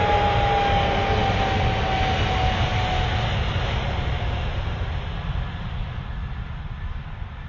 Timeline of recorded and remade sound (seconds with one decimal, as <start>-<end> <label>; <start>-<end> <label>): 0.0-7.5 recorded